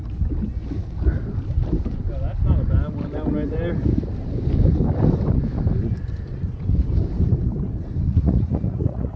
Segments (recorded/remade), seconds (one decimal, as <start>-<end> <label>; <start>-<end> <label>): 0.0-8.1 recorded; 8.1-9.2 remade